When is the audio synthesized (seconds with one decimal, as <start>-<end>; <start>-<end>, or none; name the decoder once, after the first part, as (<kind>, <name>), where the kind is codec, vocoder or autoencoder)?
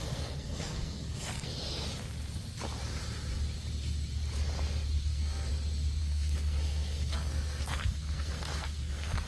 0.0-1.5 (codec, SNAC); 5.0-5.5; 6.0-9.3